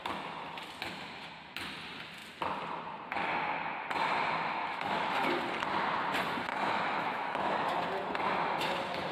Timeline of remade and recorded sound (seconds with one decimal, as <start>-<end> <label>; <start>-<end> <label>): 0.0-4.6 recorded; 4.6-5.3 remade; 5.3-6.5 recorded; 6.5-7.8 remade; 7.8-9.1 recorded